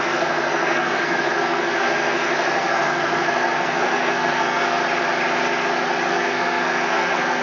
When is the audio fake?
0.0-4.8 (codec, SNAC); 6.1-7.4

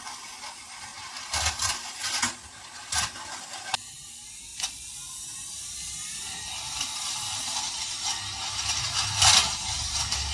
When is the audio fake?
4.5-7.9 (vocoder, BigVGAN v2)

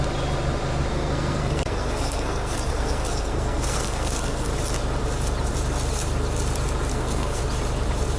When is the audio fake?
0.9-4.5 (codec, SNAC); 6.9-7.4

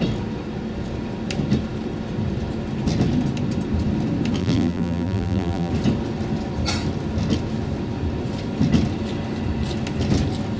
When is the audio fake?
4.4-5.7 (vocoder, BigVGAN v2)

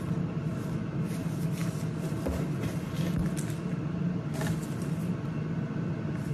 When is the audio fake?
none

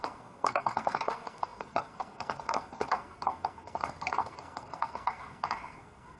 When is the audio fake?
0.0-6.2 (codec, SNAC)

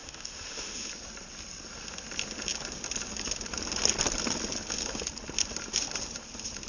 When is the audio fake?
0.0-0.9 (autoencoder, DAC-VAE)